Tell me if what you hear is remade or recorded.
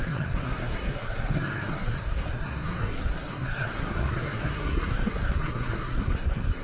remade